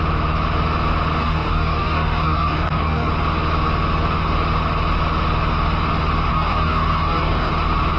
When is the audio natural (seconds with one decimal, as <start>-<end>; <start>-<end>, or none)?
0.0-1.2; 3.1-6.3; 7.5-8.0